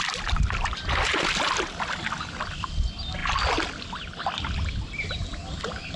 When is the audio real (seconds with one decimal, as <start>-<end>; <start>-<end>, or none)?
0.0-6.0